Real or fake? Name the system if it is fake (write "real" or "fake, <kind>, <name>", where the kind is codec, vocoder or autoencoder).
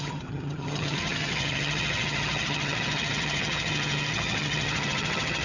fake, vocoder, HiFi-GAN